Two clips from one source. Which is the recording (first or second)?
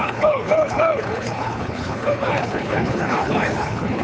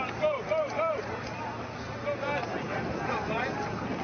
second